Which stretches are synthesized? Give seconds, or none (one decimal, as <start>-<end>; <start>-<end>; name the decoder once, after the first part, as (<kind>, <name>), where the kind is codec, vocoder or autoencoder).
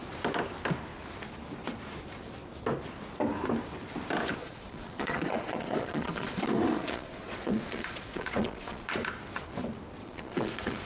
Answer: 4.4-8.9 (vocoder, Vocos); 10.0-10.9